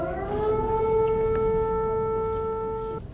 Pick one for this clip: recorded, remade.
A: remade